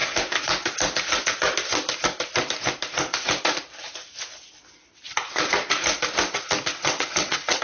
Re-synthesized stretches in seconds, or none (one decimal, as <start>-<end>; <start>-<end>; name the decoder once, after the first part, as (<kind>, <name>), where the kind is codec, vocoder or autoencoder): 6.7-7.6 (vocoder, WaveNeXt)